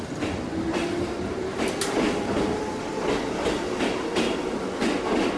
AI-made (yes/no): no